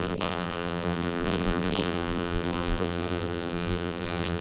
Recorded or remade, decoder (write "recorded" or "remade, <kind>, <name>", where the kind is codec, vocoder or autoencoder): remade, vocoder, BigVGAN v2